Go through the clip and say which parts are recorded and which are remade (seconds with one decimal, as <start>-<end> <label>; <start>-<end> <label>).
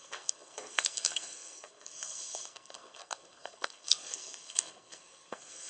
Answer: 0.0-5.7 remade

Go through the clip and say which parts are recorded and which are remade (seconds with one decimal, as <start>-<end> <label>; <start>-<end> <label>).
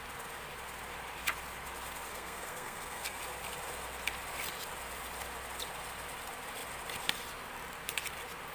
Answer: 0.0-2.1 recorded; 2.1-3.2 remade; 3.2-8.5 recorded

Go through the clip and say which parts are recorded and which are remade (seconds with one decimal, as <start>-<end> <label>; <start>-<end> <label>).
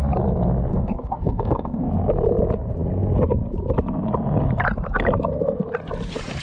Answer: 0.0-0.7 recorded; 0.7-1.9 remade; 1.9-6.4 recorded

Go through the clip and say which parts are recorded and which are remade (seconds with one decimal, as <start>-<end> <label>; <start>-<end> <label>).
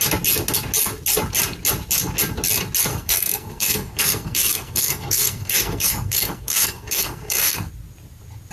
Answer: 0.0-2.9 recorded; 2.9-7.7 remade; 7.7-8.5 recorded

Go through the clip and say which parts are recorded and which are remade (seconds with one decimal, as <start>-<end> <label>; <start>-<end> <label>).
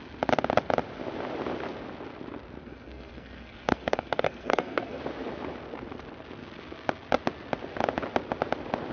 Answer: 0.0-2.6 recorded; 2.6-5.0 remade; 5.0-8.9 recorded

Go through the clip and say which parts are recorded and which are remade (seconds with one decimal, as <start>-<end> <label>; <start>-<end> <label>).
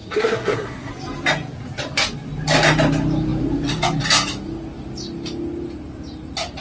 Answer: 0.0-0.9 remade; 0.9-6.6 recorded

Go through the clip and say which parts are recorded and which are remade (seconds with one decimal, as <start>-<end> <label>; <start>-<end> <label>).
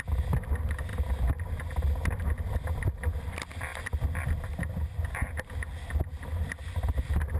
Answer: 0.0-7.4 recorded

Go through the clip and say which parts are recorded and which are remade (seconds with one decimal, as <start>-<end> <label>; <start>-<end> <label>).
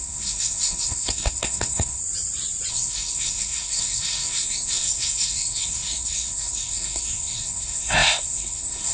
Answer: 0.0-2.0 remade; 2.0-2.7 recorded; 2.7-8.9 remade